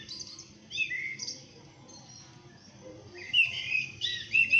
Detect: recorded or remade recorded